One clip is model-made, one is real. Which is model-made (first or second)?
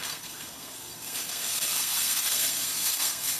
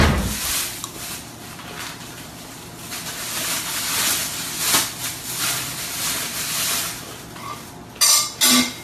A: first